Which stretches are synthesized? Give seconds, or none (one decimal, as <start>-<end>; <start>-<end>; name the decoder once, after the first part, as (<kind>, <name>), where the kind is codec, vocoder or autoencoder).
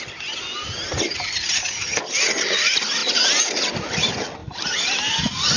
none